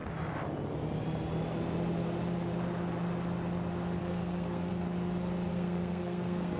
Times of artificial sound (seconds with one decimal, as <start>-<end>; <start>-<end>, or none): 4.0-4.7; 5.5-6.6